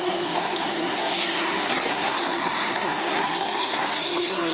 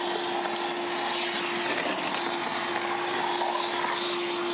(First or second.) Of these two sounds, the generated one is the first